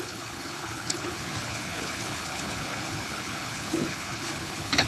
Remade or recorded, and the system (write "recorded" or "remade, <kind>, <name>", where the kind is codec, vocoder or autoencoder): remade, codec, HILCodec